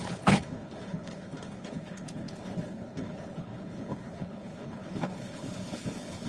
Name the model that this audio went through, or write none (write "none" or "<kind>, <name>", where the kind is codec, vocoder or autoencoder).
codec, HILCodec